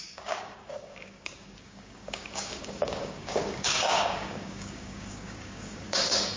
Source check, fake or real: fake